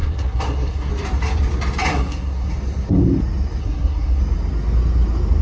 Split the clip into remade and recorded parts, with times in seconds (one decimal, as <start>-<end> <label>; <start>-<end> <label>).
0.0-0.9 remade; 0.9-1.9 recorded; 1.9-2.5 remade; 2.5-3.6 recorded; 3.6-4.2 remade; 4.2-5.4 recorded

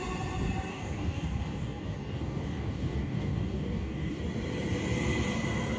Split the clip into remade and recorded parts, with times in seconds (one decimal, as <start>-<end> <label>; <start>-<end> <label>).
0.0-0.7 recorded; 0.7-4.2 remade; 4.2-5.8 recorded

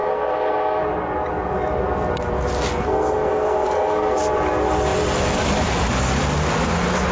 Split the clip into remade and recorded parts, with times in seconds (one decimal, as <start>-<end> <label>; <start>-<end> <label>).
0.0-0.8 remade; 0.8-2.7 recorded; 2.7-4.2 remade; 4.2-7.1 recorded

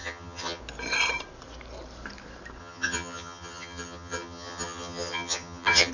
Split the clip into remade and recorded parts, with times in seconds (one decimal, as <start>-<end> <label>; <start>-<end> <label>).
0.0-0.6 remade; 0.6-2.6 recorded; 2.6-5.9 remade

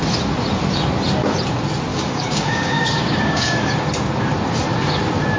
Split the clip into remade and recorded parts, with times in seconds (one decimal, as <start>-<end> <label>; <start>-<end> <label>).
0.0-1.9 recorded; 1.9-3.9 remade; 3.9-5.4 recorded

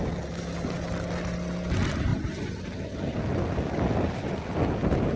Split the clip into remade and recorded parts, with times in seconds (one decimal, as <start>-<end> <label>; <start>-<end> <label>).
0.0-5.2 recorded